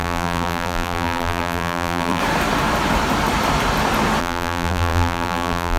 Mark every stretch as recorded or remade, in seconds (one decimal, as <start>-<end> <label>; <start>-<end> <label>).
0.0-2.2 remade; 2.2-4.2 recorded; 4.2-5.8 remade